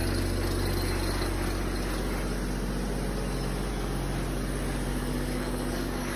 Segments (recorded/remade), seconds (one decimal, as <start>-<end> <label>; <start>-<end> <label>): 0.0-4.9 recorded; 4.9-6.2 remade